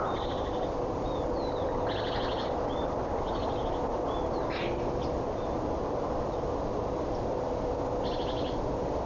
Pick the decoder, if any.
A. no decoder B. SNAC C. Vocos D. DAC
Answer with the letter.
A